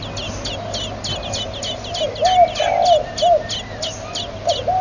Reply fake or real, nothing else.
real